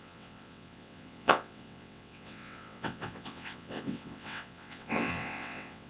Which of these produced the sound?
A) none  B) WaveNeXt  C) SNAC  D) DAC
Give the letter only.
B